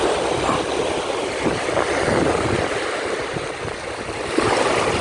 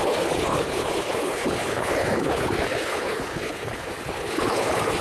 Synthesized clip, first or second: second